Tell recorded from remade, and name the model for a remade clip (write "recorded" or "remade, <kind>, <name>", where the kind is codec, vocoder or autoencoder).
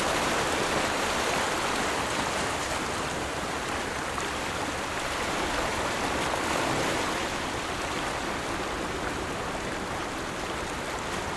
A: remade, vocoder, BigVGAN v2